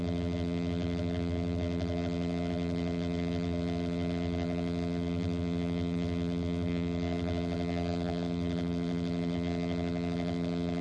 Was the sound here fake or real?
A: fake